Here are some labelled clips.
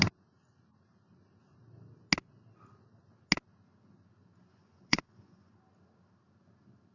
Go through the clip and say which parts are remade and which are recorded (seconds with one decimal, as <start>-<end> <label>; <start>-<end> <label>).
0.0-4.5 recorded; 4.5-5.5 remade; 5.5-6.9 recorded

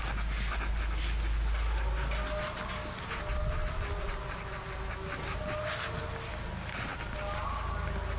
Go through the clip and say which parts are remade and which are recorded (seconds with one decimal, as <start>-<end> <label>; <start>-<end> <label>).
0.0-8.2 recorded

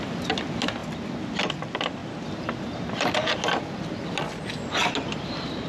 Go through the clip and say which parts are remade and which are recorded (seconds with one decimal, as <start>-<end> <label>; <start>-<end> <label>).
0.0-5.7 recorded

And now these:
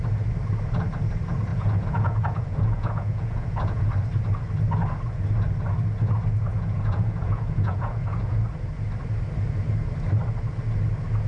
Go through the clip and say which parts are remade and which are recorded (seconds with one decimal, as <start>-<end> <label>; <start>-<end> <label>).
0.0-1.5 recorded; 1.5-3.8 remade; 3.8-6.5 recorded; 6.5-8.4 remade; 8.4-11.3 recorded

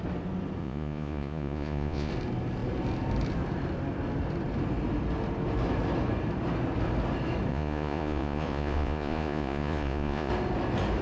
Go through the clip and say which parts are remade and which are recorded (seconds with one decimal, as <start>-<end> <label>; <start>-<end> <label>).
0.0-0.6 recorded; 0.6-2.1 remade; 2.1-7.5 recorded; 7.5-10.3 remade; 10.3-11.0 recorded

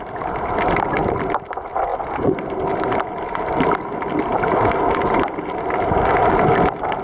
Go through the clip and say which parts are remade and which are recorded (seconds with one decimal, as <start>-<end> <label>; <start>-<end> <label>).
0.0-7.0 recorded

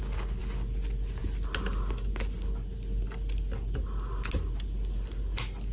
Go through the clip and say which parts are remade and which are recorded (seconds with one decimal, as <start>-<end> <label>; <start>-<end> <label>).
0.0-5.7 recorded

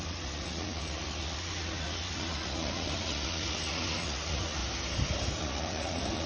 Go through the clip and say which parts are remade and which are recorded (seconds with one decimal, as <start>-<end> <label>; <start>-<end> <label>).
0.0-4.6 remade; 4.6-5.4 recorded; 5.4-6.3 remade